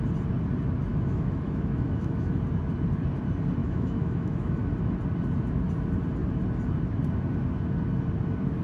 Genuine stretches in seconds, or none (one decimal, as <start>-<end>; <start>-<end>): 0.0-0.9; 2.4-3.6; 4.7-8.6